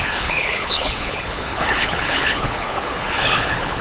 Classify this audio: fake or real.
fake